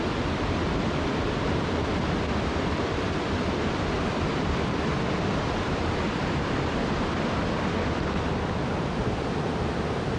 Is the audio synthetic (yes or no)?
yes